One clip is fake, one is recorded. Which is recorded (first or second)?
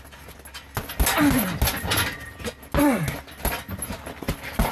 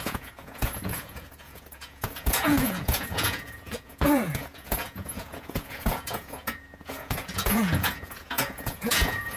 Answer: first